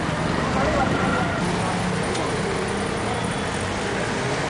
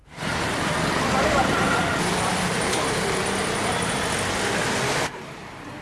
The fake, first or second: second